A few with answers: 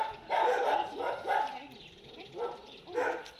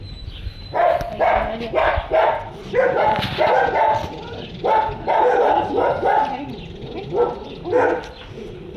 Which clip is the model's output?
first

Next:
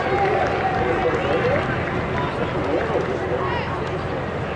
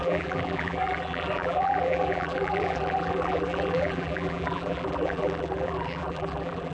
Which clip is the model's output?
second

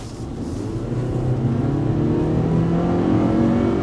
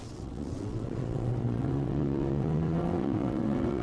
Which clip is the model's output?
second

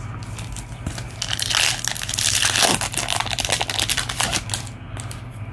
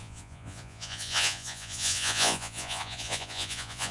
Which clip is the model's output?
second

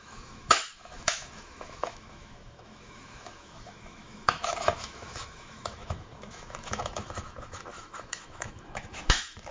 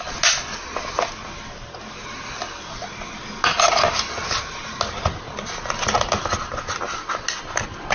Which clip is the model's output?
first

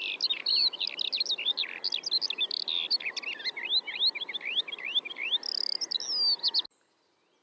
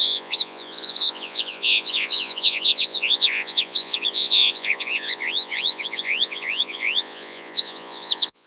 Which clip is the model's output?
second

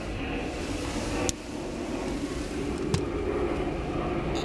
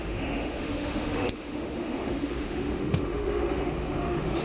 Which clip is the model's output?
second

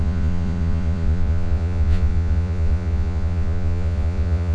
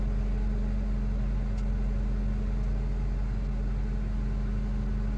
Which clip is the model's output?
first